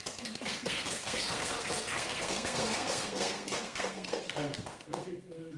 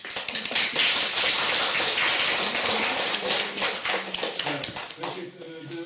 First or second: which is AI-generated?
first